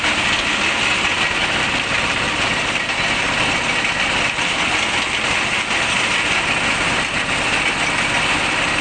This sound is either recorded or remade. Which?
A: recorded